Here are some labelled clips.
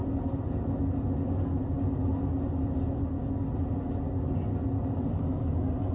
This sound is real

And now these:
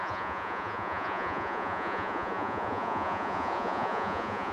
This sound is fake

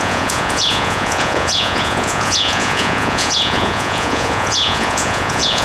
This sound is fake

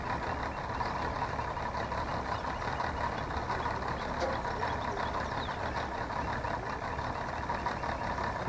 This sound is real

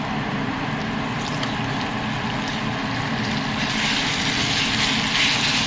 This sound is real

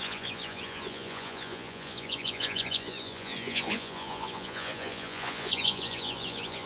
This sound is fake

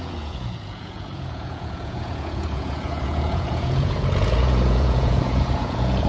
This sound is fake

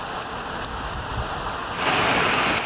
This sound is real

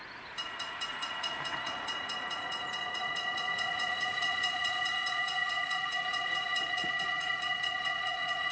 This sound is fake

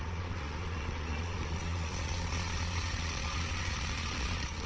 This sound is fake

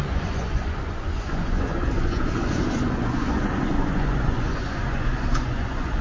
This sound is fake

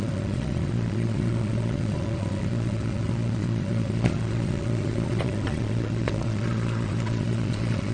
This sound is fake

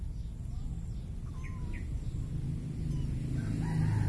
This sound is real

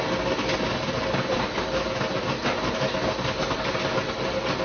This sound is real